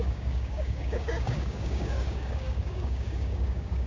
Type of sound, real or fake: fake